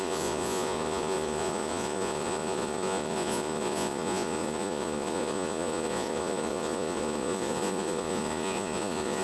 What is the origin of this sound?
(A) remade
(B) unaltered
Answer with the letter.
A